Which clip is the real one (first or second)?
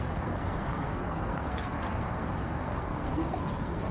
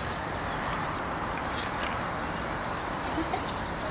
second